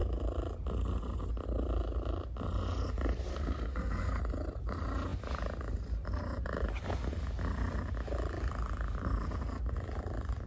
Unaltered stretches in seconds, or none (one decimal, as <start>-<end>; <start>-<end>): 0.0-3.3; 4.2-10.5